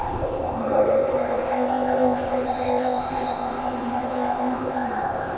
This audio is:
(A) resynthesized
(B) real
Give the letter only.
A